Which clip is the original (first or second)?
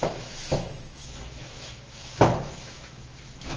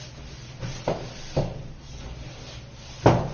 second